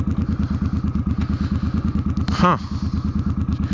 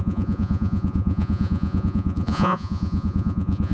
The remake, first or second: second